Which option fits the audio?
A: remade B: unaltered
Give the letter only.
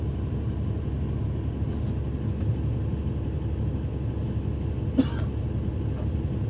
B